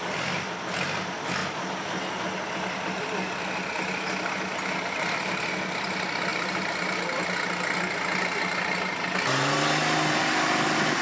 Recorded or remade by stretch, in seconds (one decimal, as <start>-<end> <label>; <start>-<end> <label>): 0.0-11.0 recorded